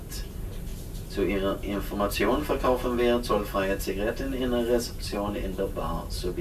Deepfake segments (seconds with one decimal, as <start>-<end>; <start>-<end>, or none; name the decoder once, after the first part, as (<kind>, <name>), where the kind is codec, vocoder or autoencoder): 0.7-1.3 (vocoder, BigVGAN v2)